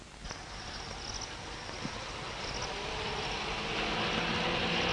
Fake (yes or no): no